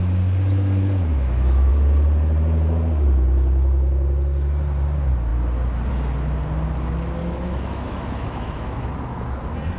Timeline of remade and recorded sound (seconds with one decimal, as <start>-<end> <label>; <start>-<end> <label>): 0.0-1.1 recorded; 1.1-1.7 remade; 1.7-7.2 recorded; 7.2-8.9 remade; 8.9-9.8 recorded